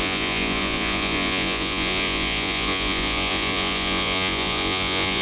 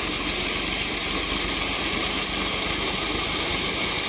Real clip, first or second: second